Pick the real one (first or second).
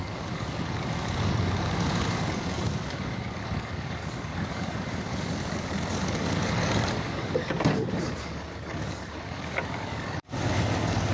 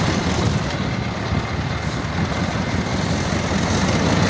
second